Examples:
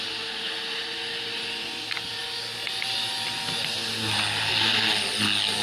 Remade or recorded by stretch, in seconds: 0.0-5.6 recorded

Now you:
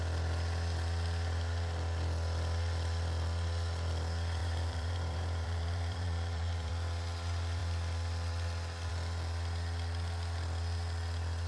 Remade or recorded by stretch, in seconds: 0.0-4.4 recorded; 4.4-6.7 remade; 6.7-11.5 recorded

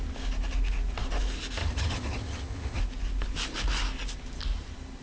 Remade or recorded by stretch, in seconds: 0.0-1.6 recorded; 1.6-2.8 remade; 2.8-5.0 recorded

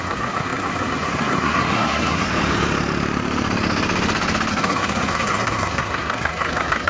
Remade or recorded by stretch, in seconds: 0.0-2.3 remade; 2.3-4.5 recorded; 4.5-6.9 remade

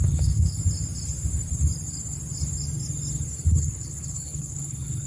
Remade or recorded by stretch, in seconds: 0.0-0.6 remade; 0.6-3.6 recorded; 3.6-5.1 remade

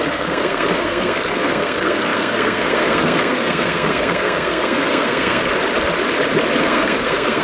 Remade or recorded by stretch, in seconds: 0.0-5.5 remade; 5.5-6.6 recorded; 6.6-7.4 remade

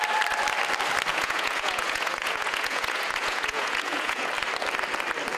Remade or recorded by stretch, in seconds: 0.0-1.1 recorded; 1.1-4.3 remade; 4.3-5.4 recorded

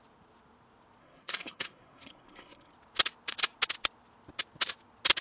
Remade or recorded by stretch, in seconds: 0.0-1.0 recorded; 1.0-2.7 remade; 2.7-5.2 recorded